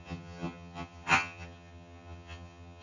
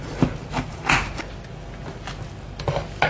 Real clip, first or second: second